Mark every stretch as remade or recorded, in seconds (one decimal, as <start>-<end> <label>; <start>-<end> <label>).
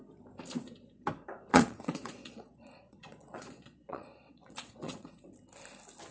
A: 0.0-1.5 recorded; 1.5-5.1 remade; 5.1-6.1 recorded